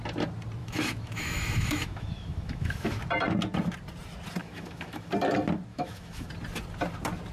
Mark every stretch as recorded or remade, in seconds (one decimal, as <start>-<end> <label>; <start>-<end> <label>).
0.0-0.6 recorded; 0.6-3.0 remade; 3.0-4.4 recorded; 4.4-5.1 remade; 5.1-5.7 recorded; 5.7-6.3 remade; 6.3-7.3 recorded